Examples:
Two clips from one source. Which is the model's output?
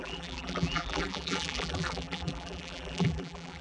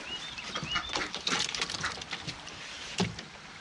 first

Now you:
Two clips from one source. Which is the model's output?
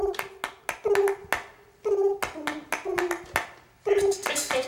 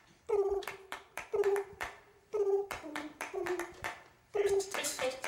second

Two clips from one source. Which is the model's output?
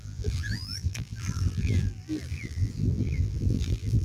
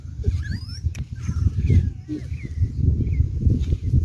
first